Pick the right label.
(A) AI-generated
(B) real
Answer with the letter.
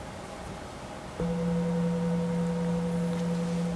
B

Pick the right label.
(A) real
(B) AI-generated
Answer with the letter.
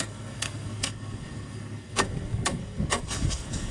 B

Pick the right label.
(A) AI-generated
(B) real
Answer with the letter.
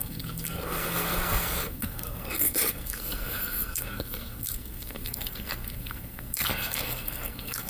A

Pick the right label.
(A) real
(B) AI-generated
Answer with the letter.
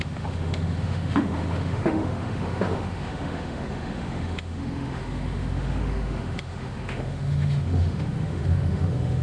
B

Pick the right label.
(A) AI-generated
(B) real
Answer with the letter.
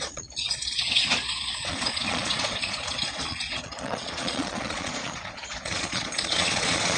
A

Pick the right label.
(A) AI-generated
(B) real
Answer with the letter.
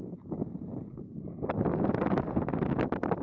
B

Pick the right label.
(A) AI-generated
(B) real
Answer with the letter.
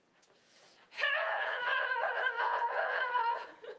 A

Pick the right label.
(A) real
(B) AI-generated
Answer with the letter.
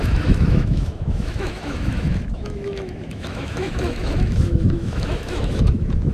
B